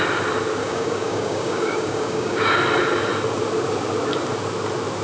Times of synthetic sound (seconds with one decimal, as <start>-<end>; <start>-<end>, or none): 0.6-2.5